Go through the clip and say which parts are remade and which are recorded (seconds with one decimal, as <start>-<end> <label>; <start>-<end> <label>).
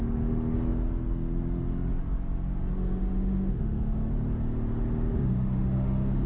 0.0-2.7 recorded; 2.7-4.1 remade; 4.1-5.1 recorded; 5.1-6.3 remade